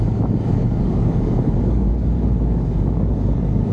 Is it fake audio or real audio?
fake